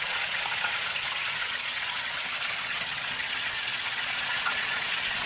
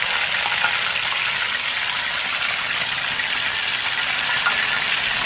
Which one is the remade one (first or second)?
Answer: first